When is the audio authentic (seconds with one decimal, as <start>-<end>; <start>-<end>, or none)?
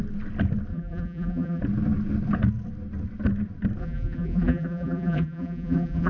0.0-0.7; 1.6-3.8